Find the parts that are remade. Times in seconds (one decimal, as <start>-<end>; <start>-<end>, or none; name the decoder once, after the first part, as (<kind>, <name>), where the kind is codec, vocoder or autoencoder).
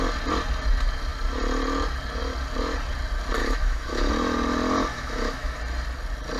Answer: 3.4-4.1 (autoencoder, DAC-VAE); 4.9-5.6